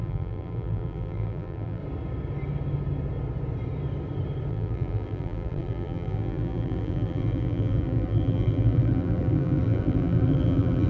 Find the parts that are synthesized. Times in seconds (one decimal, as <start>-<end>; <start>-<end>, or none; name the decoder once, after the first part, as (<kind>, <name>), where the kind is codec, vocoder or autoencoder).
0.0-1.8 (vocoder, BigVGAN v2); 4.5-10.9